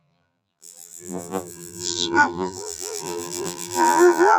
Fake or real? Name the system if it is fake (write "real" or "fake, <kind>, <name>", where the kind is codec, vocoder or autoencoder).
fake, vocoder, BigVGAN v2